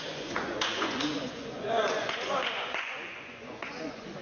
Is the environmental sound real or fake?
fake